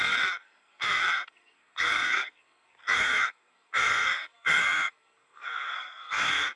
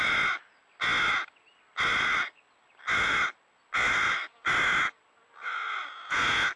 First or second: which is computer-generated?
first